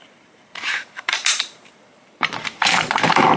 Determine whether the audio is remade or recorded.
remade